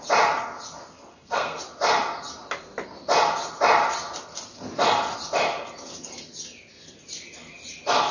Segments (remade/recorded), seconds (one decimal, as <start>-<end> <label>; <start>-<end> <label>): 0.0-1.1 recorded; 1.1-1.6 remade; 1.6-8.1 recorded